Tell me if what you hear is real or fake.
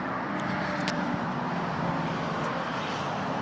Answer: real